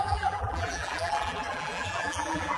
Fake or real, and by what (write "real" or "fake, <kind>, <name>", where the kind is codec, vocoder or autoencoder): fake, vocoder, BigVGAN v2